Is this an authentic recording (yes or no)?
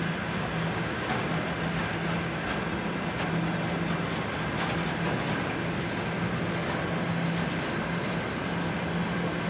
yes